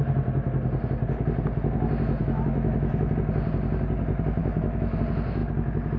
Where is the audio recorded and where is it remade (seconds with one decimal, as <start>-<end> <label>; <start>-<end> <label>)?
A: 0.0-2.2 recorded; 2.2-3.1 remade; 3.1-4.4 recorded; 4.4-5.0 remade; 5.0-6.0 recorded